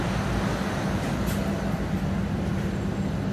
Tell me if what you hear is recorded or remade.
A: recorded